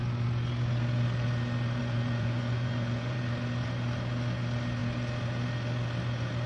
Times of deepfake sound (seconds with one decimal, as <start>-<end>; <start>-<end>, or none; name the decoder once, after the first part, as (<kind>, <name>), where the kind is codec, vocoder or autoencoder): 1.8-3.2 (vocoder, Vocos)